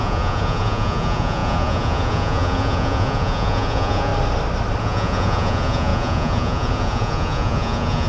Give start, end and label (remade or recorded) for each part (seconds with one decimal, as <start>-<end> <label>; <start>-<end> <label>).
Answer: 0.0-4.1 remade; 4.1-4.8 recorded; 4.8-8.1 remade